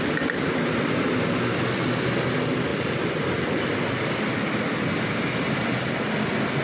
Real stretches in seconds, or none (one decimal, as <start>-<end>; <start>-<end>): 0.0-6.6